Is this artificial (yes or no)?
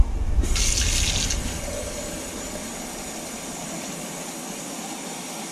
no